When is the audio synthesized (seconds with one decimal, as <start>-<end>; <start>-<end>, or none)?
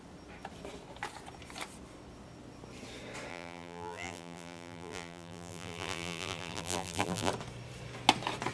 3.3-7.3